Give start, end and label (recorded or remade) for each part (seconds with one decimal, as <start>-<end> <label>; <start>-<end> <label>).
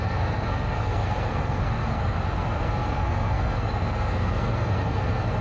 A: 0.0-5.4 remade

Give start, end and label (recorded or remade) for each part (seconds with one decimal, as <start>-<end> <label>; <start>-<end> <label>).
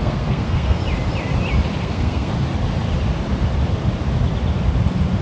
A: 0.0-0.8 remade; 0.8-1.8 recorded; 1.8-2.3 remade; 2.3-5.2 recorded